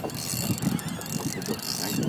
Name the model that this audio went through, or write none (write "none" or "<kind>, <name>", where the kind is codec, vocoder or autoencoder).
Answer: none